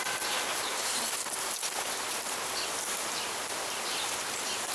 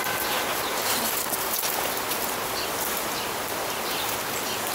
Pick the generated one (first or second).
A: first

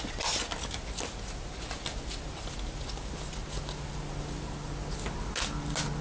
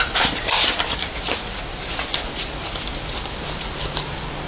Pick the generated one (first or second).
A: second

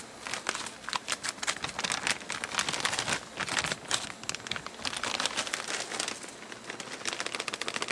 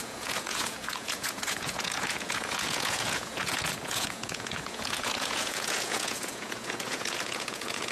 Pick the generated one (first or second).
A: second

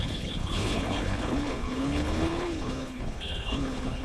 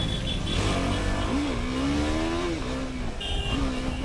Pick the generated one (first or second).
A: first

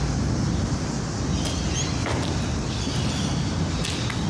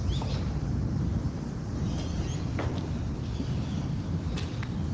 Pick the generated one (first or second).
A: second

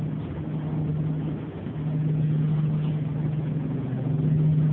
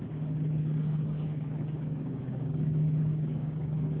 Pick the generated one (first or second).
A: second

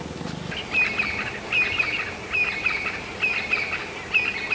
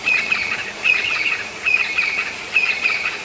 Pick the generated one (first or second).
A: second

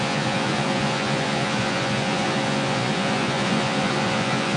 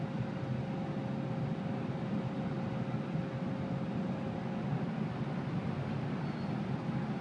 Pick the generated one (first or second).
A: first